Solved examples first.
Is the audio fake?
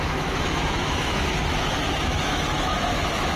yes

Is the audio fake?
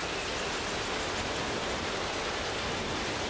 no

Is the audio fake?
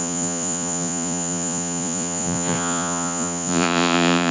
yes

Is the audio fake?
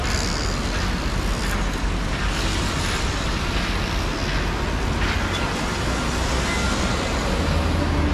no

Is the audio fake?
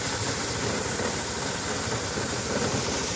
no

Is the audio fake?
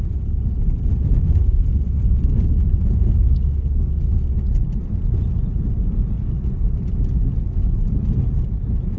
no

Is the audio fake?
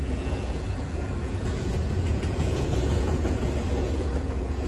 yes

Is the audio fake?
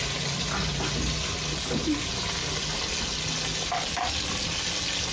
no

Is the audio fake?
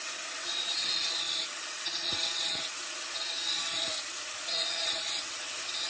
yes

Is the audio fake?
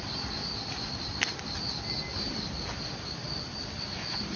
no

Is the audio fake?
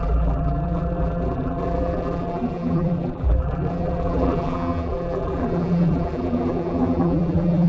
yes